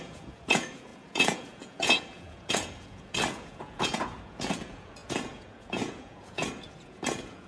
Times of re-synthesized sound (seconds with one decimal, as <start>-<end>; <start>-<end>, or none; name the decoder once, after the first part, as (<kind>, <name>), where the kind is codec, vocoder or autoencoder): 0.0-7.5 (vocoder, Vocos)